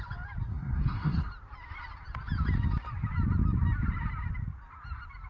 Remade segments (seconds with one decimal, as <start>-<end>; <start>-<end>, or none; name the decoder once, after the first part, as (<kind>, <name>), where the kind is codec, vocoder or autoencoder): 0.5-1.3 (codec, SNAC)